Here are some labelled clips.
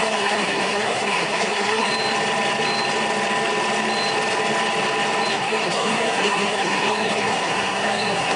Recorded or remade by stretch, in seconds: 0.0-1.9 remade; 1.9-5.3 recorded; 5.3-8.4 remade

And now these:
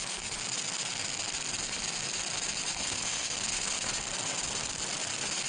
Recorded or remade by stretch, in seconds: 0.0-2.8 recorded; 2.8-3.9 remade; 3.9-5.5 recorded

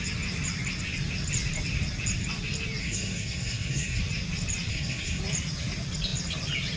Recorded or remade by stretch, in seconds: 0.0-2.8 recorded; 2.8-4.0 remade; 4.0-4.7 recorded; 4.7-5.2 remade; 5.2-6.8 recorded

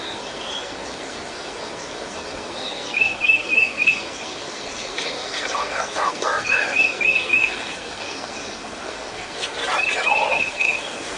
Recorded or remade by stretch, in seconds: 0.0-9.6 remade; 9.6-10.3 recorded; 10.3-11.2 remade